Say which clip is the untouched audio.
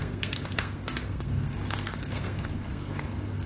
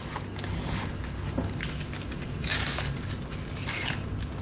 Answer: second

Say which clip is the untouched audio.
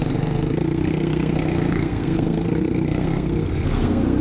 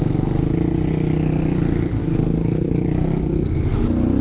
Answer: second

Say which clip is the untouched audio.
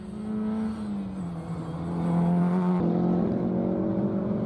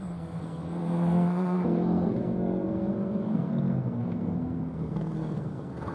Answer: first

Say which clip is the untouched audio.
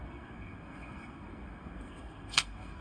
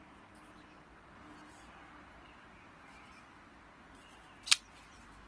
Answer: second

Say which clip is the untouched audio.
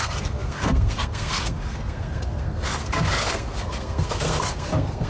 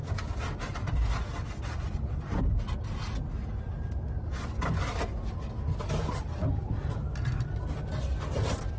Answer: second